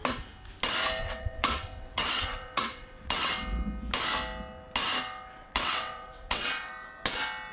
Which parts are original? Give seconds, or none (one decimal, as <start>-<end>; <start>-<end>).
0.0-1.0; 3.3-5.4; 6.7-7.5